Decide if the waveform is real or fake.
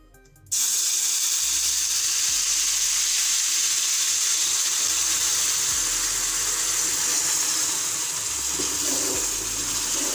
real